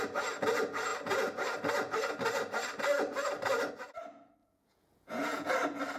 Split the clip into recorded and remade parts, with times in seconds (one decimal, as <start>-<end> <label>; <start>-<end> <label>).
0.0-4.4 recorded; 4.4-5.5 remade; 5.5-6.0 recorded